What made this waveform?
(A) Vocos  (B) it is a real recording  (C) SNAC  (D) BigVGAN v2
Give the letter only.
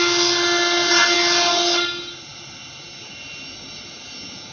B